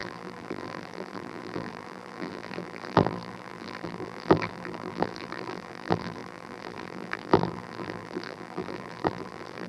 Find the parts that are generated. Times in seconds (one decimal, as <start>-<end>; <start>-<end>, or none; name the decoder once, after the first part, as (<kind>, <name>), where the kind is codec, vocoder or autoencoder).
0.0-9.7 (vocoder, BigVGAN v2)